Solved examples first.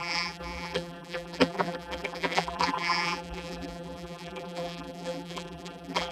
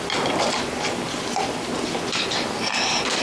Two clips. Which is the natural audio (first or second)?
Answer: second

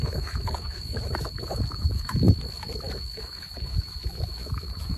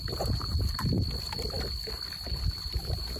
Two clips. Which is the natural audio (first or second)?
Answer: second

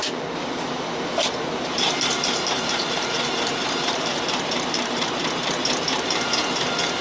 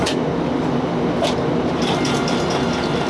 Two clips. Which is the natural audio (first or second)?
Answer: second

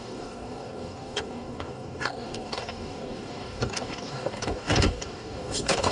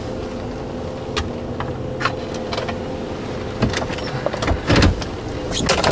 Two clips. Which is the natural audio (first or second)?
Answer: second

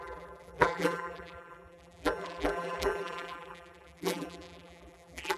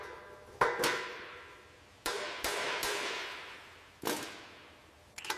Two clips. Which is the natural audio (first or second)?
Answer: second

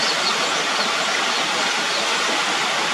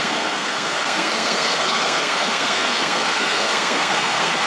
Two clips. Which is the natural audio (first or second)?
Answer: first